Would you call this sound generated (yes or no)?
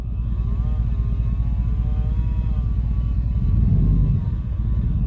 no